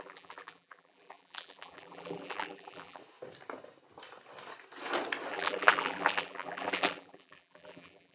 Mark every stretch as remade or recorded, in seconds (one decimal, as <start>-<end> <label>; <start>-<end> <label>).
0.0-3.0 remade; 3.0-5.3 recorded; 5.3-8.1 remade

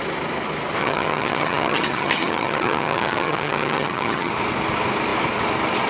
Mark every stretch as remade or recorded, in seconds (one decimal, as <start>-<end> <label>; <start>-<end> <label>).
0.0-0.8 recorded; 0.8-4.3 remade; 4.3-5.9 recorded

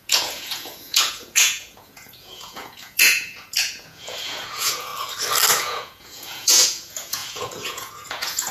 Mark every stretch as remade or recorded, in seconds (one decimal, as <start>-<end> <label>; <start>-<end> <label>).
0.0-4.9 remade; 4.9-5.6 recorded; 5.6-8.5 remade

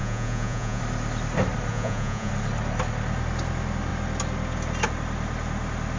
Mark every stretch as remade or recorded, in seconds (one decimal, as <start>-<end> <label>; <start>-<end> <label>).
0.0-0.8 remade; 0.8-1.7 recorded; 1.7-2.3 remade; 2.3-6.0 recorded

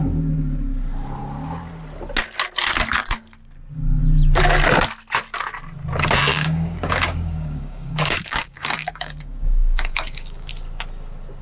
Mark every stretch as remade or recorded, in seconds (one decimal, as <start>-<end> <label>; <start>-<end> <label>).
0.0-6.3 recorded; 6.3-10.5 remade; 10.5-11.4 recorded